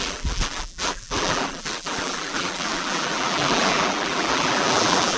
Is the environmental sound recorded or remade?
remade